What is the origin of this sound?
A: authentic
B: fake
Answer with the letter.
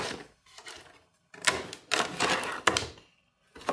A